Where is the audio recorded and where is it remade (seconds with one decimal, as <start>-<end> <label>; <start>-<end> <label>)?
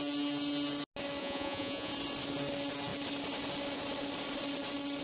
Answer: 0.0-1.2 recorded; 1.2-1.9 remade; 1.9-5.0 recorded